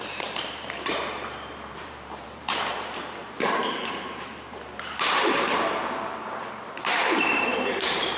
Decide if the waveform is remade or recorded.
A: remade